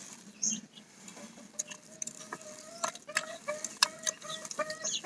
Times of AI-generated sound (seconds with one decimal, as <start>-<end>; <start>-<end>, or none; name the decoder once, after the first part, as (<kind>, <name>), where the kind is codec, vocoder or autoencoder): none